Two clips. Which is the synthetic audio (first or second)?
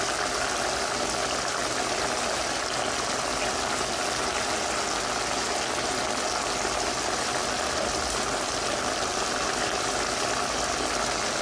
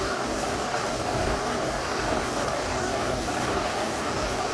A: second